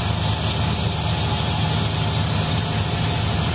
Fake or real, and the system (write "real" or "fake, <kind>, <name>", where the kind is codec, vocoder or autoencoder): real